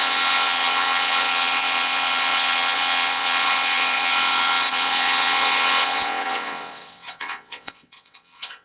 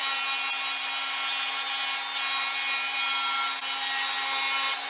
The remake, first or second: first